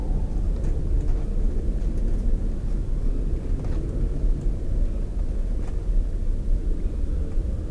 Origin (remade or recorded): recorded